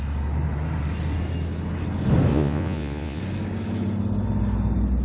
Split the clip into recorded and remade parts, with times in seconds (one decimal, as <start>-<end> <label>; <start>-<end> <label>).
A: 0.0-2.3 recorded; 2.3-3.2 remade; 3.2-5.0 recorded